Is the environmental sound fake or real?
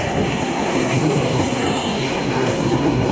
fake